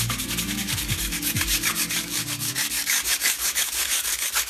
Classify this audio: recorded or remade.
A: remade